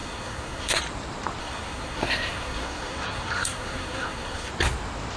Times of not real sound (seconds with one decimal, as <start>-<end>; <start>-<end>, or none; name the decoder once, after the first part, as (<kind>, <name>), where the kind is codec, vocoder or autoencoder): 0.0-0.8 (codec, SNAC); 1.4-4.5